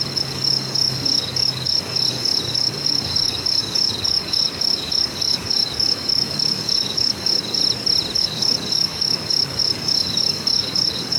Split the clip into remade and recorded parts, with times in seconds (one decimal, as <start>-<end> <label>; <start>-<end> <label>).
0.0-7.6 remade; 7.6-8.2 recorded; 8.2-11.2 remade